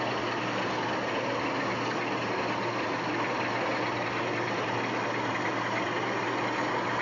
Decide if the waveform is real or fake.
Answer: real